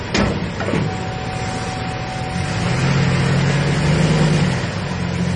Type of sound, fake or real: real